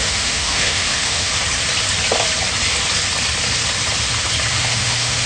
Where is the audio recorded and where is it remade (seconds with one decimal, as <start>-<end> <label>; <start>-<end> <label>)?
0.0-1.3 remade; 1.3-4.5 recorded; 4.5-5.3 remade